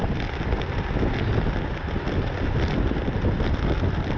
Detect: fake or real real